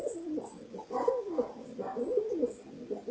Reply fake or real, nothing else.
real